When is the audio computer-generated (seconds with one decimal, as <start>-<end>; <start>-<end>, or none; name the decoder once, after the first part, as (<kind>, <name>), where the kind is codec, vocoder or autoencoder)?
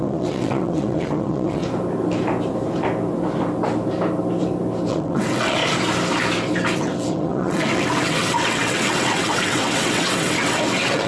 0.0-1.6 (vocoder, WaveNeXt); 4.9-5.6; 6.8-11.1